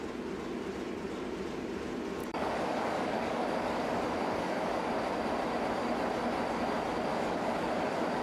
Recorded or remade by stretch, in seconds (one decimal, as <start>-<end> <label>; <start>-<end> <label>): 0.0-2.2 recorded; 2.2-4.9 remade; 4.9-7.1 recorded; 7.1-8.2 remade